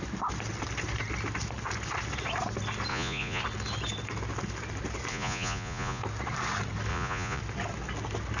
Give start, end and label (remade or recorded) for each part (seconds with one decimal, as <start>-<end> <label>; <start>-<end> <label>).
0.0-2.9 recorded; 2.9-3.4 remade; 3.4-5.1 recorded; 5.1-6.0 remade; 6.0-6.9 recorded; 6.9-7.4 remade; 7.4-8.4 recorded